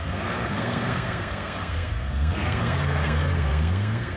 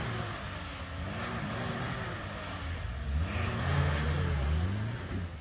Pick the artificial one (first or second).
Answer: first